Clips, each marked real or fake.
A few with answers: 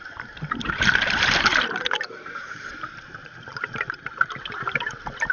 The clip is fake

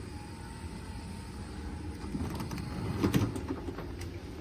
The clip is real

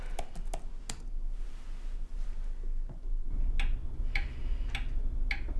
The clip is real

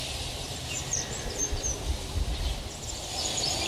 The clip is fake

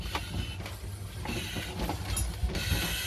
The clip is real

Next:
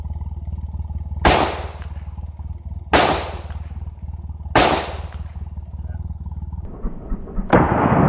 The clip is real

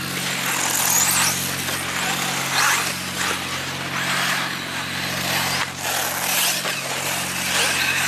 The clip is real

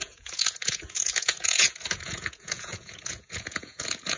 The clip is fake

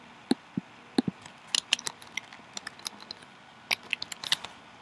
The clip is real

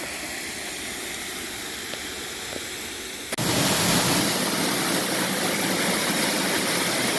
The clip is real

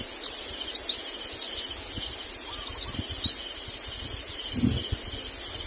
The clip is real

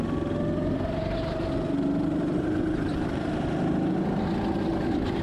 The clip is real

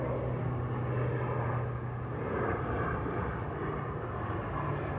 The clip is real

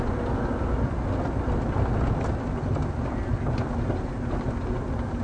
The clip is real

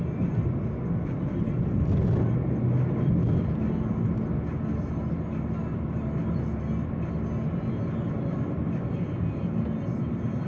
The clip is real